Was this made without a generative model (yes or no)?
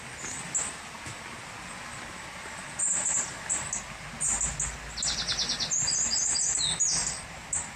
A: yes